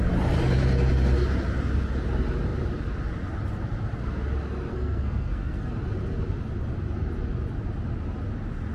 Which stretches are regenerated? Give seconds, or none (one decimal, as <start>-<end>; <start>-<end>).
4.7-5.7

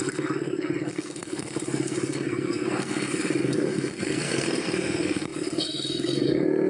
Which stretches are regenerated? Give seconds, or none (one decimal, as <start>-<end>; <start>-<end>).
0.0-6.7

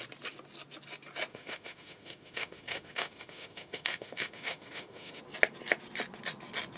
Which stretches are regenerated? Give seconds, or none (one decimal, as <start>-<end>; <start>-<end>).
1.3-5.2

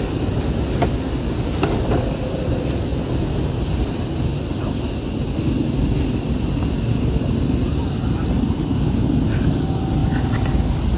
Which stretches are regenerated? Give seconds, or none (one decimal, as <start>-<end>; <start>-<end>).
none

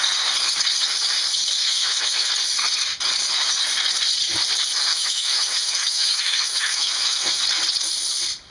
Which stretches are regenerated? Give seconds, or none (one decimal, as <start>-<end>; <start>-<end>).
1.6-2.3; 4.9-7.4